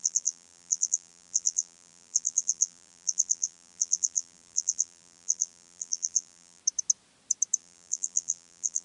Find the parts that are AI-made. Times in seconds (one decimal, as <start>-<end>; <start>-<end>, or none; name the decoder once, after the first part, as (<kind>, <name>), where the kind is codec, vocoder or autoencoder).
0.0-6.6 (vocoder, BigVGAN v2); 7.6-8.8